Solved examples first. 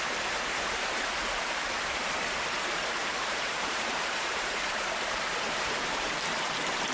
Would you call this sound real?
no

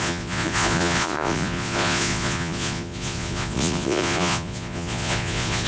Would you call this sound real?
no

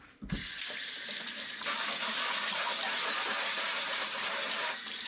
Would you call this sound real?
yes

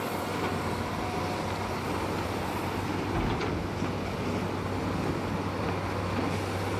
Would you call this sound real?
yes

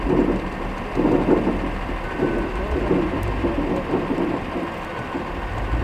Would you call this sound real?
yes